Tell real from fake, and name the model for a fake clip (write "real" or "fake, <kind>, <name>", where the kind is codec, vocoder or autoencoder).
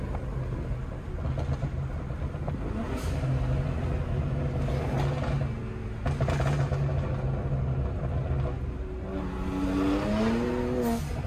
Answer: real